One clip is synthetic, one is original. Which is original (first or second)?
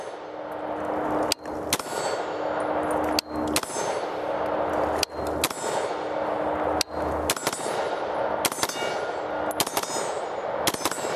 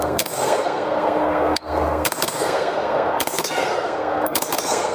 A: first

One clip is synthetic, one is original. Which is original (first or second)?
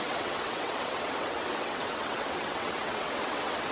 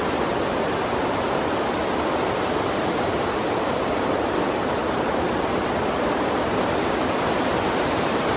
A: second